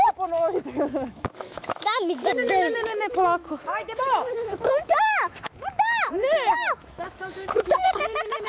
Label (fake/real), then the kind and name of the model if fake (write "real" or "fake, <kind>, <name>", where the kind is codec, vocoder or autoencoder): fake, autoencoder, DAC-VAE